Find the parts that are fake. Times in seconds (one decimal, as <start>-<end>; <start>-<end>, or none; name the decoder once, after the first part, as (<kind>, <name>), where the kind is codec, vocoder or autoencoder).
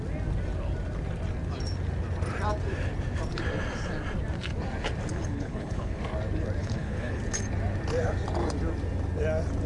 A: 5.1-6.0 (codec, HILCodec); 6.6-7.2